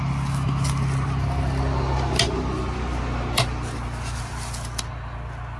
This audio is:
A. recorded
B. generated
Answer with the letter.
A